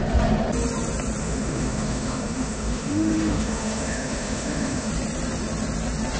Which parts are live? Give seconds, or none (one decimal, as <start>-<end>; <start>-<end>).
0.0-1.2; 4.9-6.2